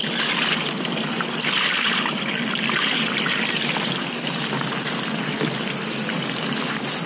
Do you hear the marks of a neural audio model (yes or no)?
no